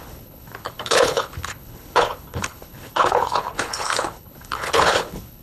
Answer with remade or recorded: remade